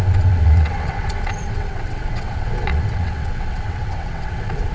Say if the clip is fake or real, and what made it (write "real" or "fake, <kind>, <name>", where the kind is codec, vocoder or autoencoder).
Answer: fake, vocoder, WaveNeXt